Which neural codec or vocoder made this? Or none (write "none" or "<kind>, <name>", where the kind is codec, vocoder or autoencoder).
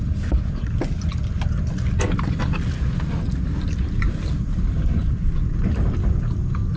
none